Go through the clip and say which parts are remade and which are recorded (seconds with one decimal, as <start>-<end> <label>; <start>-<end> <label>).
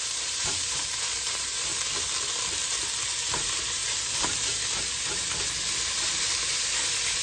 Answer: 0.0-1.7 remade; 1.7-3.4 recorded; 3.4-3.8 remade; 3.8-7.2 recorded